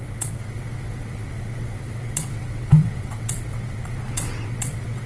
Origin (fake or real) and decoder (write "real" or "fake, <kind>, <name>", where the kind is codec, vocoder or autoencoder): fake, vocoder, WaveNeXt